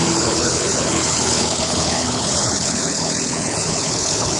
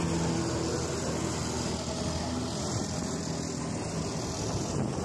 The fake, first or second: first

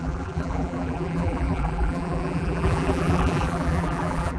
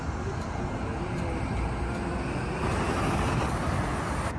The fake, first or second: first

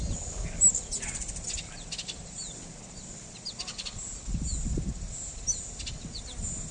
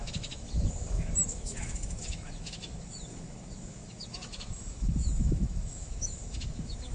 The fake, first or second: second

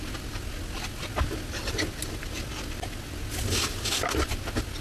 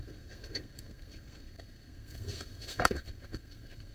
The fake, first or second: second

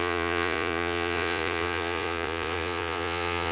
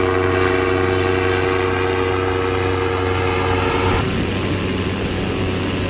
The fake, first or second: first